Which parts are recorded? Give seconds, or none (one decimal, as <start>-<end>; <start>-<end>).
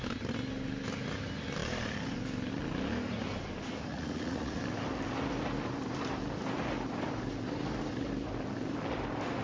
0.0-3.9; 4.6-9.4